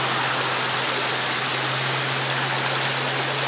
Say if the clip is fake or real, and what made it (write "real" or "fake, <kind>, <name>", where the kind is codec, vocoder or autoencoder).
real